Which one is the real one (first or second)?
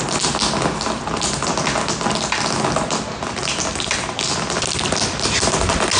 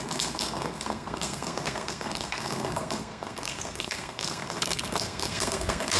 first